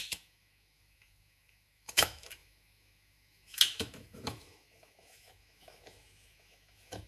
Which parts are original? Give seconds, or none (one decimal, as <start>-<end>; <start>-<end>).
none